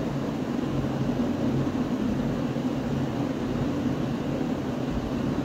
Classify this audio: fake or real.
real